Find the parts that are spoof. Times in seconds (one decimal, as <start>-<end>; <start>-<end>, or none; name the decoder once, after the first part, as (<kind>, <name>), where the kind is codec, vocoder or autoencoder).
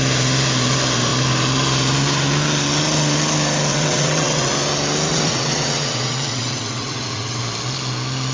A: 3.7-4.5 (vocoder, WaveNeXt); 5.1-7.4